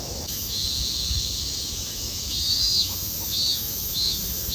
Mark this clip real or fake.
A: fake